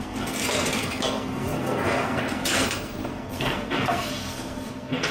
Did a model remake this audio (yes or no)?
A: yes